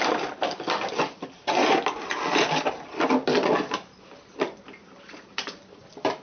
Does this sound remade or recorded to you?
recorded